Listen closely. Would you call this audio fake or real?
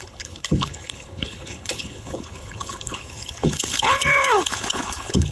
fake